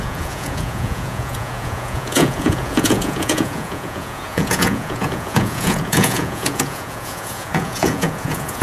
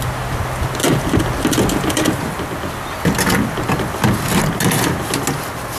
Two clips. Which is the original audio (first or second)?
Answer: second